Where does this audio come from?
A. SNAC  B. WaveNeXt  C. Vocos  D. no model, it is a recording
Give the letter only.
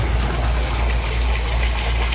D